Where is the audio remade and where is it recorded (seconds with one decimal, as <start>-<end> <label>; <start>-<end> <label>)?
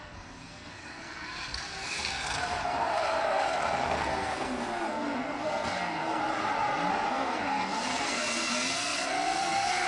0.0-6.2 remade; 6.2-6.9 recorded; 6.9-9.9 remade